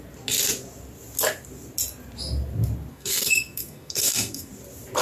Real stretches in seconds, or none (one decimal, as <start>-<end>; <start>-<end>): 0.0-2.9; 4.5-5.0